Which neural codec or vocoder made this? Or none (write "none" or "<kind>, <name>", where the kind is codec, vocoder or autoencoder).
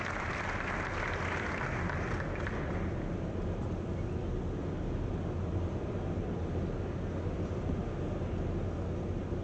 none